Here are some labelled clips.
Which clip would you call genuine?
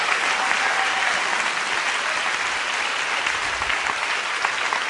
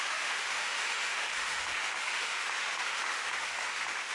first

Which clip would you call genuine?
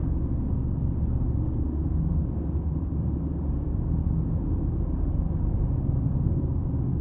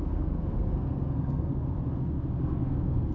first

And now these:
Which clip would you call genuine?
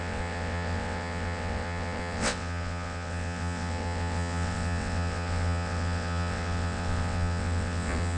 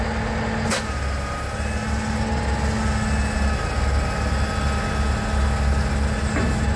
second